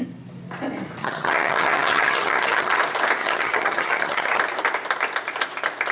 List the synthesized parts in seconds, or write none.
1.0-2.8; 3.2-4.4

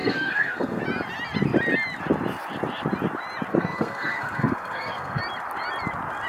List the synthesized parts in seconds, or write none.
0.0-0.8; 3.5-5.2

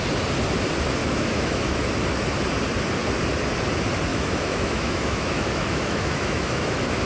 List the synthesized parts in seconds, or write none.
1.0-1.9; 4.1-7.1

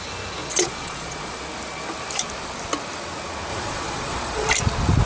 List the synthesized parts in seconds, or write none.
0.4-1.4; 3.5-4.5